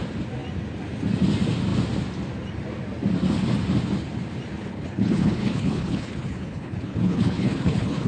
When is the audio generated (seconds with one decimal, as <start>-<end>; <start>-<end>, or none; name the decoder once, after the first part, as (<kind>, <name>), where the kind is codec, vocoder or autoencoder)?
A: 4.6-8.1 (codec, HILCodec)